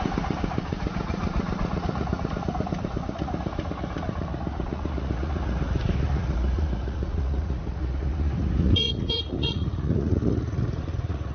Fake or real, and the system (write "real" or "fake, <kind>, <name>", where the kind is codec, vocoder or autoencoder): fake, vocoder, Vocos